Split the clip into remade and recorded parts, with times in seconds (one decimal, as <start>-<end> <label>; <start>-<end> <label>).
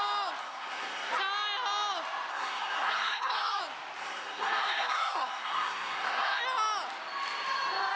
0.0-0.4 recorded; 0.4-1.1 remade; 1.1-2.3 recorded; 2.3-3.6 remade; 3.6-4.0 recorded; 4.0-6.4 remade; 6.4-8.0 recorded